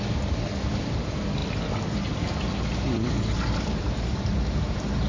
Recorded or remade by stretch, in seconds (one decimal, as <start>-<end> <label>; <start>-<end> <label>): 0.0-1.4 recorded; 1.4-4.2 remade; 4.2-5.1 recorded